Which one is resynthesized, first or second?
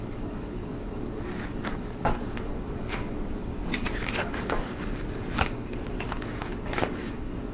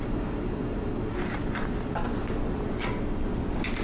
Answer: first